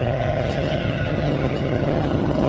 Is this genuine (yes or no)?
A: no